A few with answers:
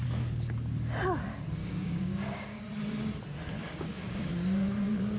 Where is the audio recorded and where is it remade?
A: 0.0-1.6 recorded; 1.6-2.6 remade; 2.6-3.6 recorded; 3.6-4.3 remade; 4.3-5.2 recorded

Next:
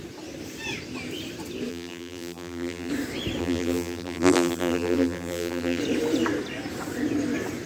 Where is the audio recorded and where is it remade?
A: 0.0-1.7 recorded; 1.7-2.9 remade; 2.9-3.4 recorded; 3.4-5.8 remade; 5.8-7.7 recorded

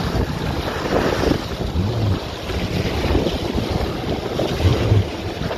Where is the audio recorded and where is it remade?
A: 0.0-4.7 recorded; 4.7-5.6 remade

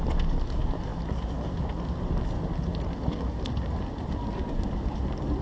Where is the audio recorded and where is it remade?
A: 0.0-5.4 recorded

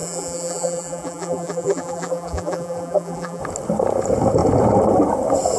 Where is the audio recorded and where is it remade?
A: 0.0-3.4 remade; 3.4-5.6 recorded

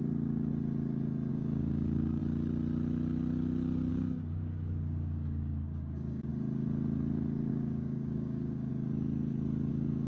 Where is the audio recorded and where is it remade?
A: 0.0-0.5 remade; 0.5-1.3 recorded; 1.3-2.2 remade; 2.2-3.9 recorded; 3.9-6.3 remade; 6.3-7.5 recorded; 7.5-8.7 remade; 8.7-9.7 recorded; 9.7-10.1 remade

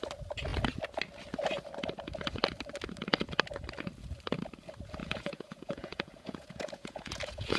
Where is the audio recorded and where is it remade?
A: 0.0-5.0 recorded; 5.0-7.6 remade

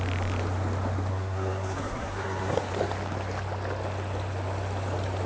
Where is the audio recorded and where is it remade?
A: 0.0-1.1 recorded; 1.1-2.7 remade; 2.7-5.3 recorded